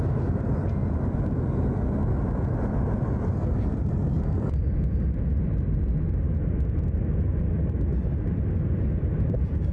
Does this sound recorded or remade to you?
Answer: recorded